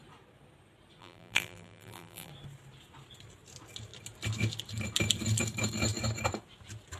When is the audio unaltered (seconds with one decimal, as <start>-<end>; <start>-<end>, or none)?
0.0-1.0; 2.3-7.0